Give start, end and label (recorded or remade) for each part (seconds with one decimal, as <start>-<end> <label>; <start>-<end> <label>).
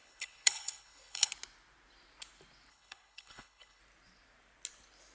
0.0-1.3 remade; 1.3-2.7 recorded; 2.7-3.8 remade; 3.8-5.1 recorded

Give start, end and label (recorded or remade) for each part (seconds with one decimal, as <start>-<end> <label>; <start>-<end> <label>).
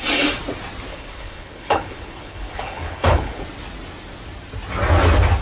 0.0-0.9 recorded; 0.9-3.4 remade; 3.4-5.4 recorded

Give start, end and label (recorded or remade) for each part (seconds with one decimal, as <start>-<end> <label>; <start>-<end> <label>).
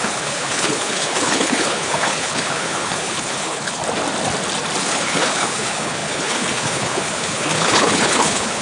0.0-3.8 remade; 3.8-4.8 recorded; 4.8-8.6 remade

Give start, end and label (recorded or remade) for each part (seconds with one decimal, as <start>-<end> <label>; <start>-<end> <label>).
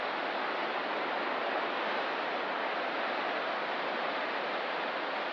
0.0-5.3 recorded